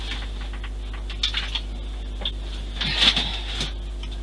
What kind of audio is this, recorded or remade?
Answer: recorded